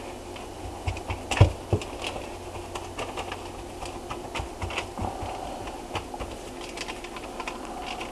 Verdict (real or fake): real